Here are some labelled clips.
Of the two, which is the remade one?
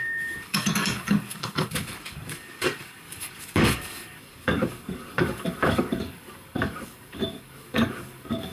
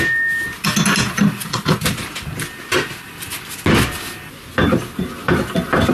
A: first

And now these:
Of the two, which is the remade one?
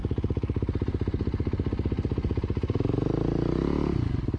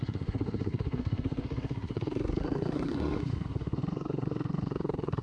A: second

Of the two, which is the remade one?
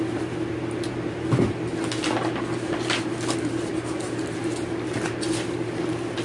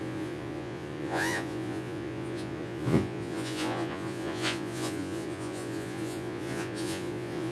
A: second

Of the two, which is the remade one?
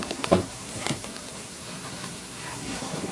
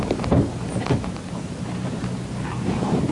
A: first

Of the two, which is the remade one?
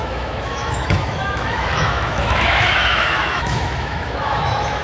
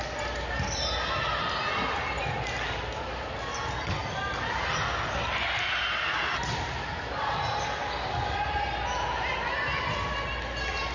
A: first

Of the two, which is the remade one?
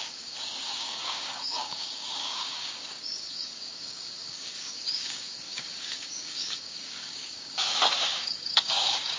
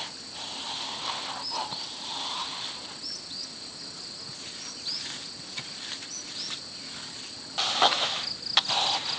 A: first